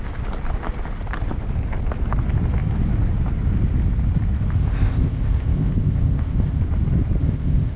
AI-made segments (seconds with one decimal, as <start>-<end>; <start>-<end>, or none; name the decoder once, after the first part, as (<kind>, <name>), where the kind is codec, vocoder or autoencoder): 4.6-6.6 (codec, ZipCodec); 7.2-7.8